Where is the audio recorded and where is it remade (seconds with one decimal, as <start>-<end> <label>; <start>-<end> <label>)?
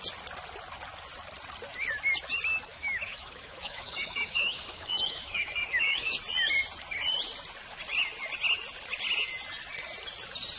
0.0-2.7 recorded; 2.7-6.1 remade; 6.1-10.6 recorded